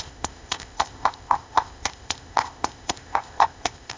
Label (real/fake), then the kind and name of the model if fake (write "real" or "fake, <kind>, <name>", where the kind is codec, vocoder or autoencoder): fake, codec, ZipCodec